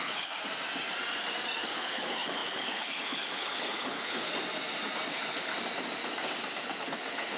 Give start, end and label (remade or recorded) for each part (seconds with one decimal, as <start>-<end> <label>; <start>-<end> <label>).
0.0-0.4 remade; 0.4-1.6 recorded; 1.6-4.3 remade; 4.3-5.1 recorded; 5.1-5.5 remade; 5.5-6.8 recorded; 6.8-7.4 remade